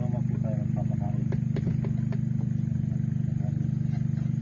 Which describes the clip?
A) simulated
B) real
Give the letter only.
B